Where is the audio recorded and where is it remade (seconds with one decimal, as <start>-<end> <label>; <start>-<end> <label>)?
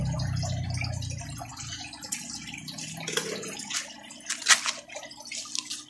0.0-5.9 recorded